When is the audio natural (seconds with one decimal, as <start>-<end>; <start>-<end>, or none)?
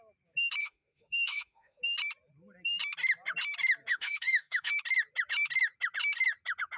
0.0-0.6; 1.8-3.9; 4.7-6.8